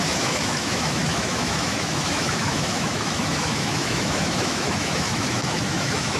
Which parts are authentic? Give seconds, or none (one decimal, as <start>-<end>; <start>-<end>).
none